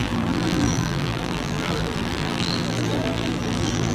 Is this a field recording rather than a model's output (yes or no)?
no